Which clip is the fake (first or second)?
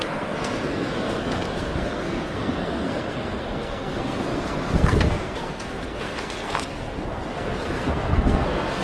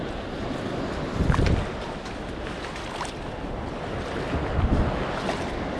first